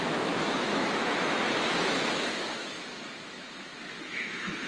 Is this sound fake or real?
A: fake